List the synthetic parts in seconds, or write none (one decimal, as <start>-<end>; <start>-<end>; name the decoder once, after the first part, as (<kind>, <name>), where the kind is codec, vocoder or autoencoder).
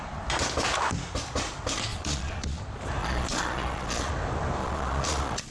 1.9-2.6 (vocoder, Vocos); 3.0-4.1; 4.6-5.5